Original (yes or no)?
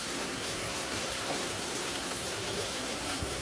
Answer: no